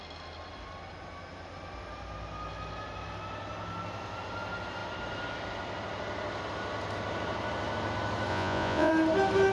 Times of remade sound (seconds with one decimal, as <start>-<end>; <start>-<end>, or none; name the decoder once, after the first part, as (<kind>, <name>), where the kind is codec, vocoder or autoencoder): 8.3-8.9 (vocoder, Vocos)